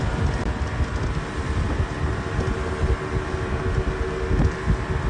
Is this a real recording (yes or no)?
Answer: yes